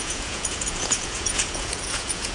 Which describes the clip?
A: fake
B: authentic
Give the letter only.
A